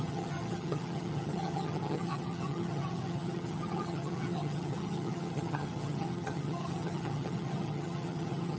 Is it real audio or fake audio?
fake